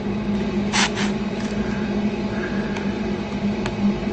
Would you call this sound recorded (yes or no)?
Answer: yes